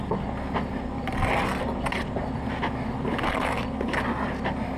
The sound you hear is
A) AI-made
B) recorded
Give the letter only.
B